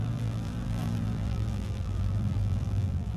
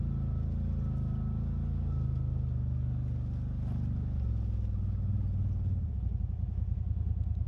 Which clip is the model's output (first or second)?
first